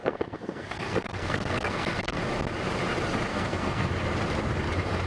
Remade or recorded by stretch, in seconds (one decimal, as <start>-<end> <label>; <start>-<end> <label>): 0.0-2.2 remade; 2.2-3.3 recorded; 3.3-3.9 remade; 3.9-5.1 recorded